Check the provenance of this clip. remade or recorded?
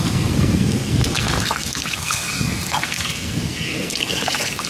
remade